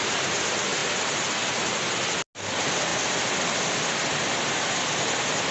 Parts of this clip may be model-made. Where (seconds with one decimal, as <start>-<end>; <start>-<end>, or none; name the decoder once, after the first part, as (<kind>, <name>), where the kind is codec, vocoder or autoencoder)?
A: none